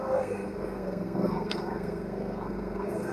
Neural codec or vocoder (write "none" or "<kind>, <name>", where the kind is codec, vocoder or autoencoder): codec, SNAC